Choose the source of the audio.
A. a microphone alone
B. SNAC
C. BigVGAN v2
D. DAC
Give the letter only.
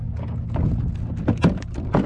A